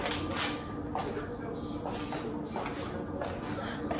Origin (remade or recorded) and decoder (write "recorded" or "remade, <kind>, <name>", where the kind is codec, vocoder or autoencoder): recorded